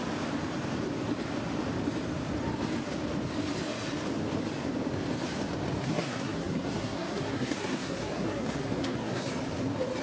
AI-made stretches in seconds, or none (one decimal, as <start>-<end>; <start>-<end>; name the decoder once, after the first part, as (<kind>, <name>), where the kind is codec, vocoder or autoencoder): 5.8-9.3 (codec, SNAC)